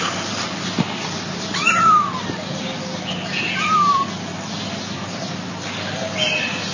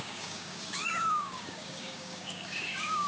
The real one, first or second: first